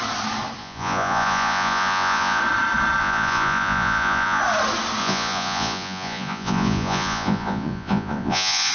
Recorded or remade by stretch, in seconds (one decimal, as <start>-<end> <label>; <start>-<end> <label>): 0.0-0.6 recorded; 0.6-2.4 remade; 2.4-3.0 recorded; 3.0-4.4 remade; 4.4-5.0 recorded; 5.0-8.7 remade